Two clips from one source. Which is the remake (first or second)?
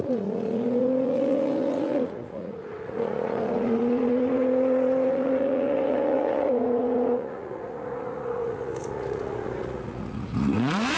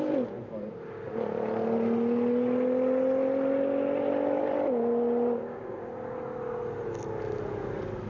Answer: first